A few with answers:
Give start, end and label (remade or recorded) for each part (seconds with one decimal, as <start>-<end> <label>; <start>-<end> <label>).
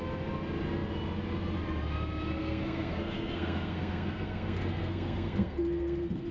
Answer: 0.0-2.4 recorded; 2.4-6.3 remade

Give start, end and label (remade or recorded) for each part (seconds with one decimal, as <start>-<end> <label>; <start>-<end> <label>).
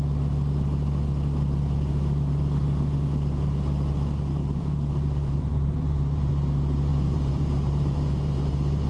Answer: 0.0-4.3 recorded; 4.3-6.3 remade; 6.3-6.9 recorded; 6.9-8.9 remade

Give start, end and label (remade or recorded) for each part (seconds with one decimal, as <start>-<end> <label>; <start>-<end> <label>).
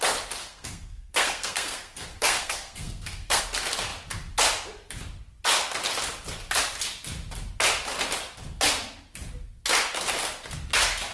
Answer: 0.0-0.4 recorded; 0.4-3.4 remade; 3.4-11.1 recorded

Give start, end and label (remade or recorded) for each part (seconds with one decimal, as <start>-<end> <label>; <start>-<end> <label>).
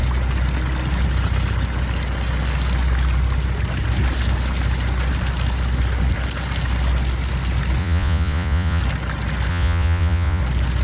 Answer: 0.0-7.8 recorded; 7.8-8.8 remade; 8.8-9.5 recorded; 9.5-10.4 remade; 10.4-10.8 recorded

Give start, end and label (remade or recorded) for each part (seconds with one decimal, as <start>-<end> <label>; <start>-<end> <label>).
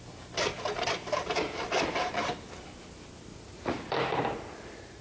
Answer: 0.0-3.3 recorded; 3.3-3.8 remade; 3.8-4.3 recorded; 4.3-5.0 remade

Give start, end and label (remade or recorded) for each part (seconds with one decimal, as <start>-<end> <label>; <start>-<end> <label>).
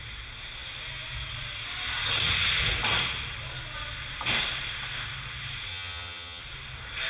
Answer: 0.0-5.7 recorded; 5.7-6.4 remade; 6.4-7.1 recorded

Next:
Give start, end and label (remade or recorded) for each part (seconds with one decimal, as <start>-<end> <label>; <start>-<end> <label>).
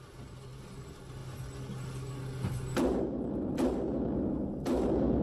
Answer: 0.0-5.2 recorded